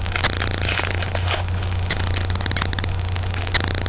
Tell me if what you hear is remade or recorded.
recorded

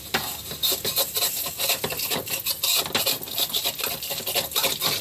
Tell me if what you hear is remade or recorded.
recorded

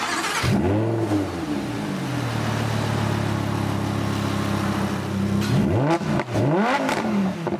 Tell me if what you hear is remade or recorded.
recorded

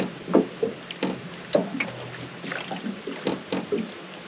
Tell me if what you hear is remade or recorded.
recorded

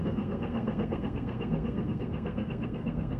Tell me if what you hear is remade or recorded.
remade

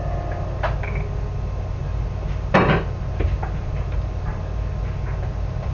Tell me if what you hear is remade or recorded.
recorded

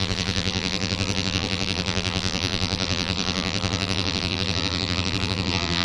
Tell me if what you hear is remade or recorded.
remade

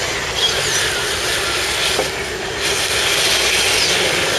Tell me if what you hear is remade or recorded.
recorded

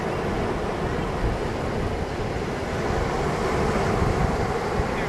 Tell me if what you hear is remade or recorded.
recorded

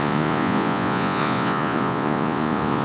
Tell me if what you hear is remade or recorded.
remade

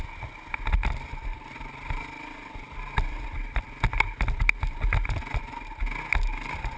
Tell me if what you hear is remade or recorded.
recorded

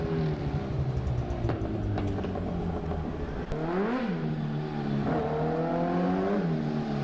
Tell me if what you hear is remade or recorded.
recorded